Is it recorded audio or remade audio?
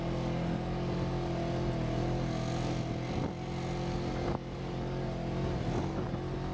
recorded